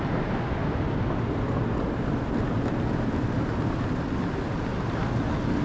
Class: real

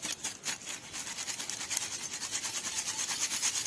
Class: real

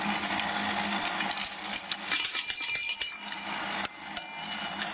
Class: real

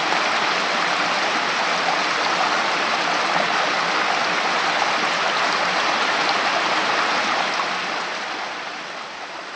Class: real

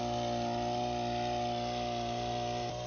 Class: real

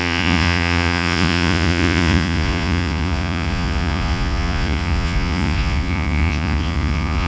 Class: fake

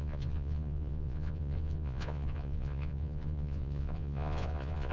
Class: fake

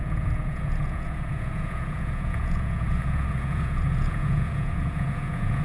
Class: fake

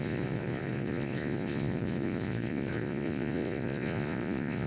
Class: fake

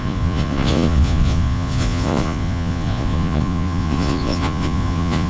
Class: fake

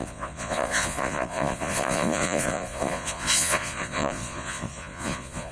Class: fake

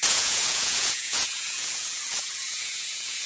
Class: fake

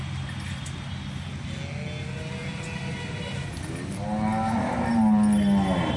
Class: real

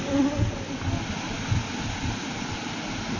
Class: real